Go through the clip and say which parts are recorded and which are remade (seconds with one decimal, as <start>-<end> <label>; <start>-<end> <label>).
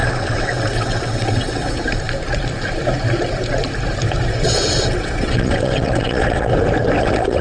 0.0-1.8 remade; 1.8-4.3 recorded; 4.3-6.5 remade; 6.5-7.0 recorded; 7.0-7.4 remade